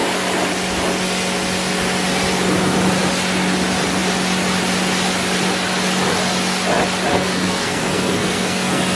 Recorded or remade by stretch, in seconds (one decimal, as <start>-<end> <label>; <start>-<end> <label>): 0.0-7.1 recorded; 7.1-9.0 remade